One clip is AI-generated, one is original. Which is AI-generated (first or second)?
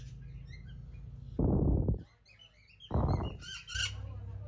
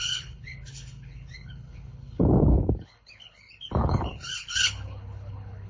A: second